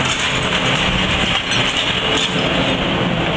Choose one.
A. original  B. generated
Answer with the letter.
A